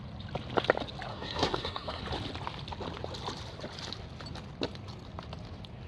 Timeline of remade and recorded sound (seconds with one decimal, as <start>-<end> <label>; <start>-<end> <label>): 0.0-1.1 recorded; 1.1-2.0 remade; 2.0-5.9 recorded